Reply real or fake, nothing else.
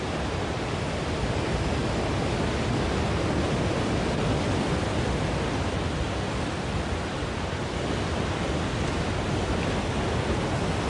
real